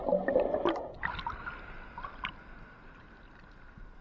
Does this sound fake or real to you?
real